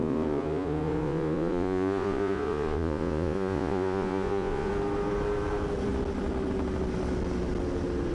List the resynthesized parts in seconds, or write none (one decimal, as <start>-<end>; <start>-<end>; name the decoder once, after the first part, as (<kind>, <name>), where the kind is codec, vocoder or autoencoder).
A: 0.0-4.7 (vocoder, Vocos)